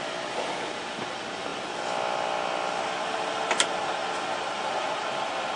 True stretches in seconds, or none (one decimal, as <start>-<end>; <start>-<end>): 0.0-5.6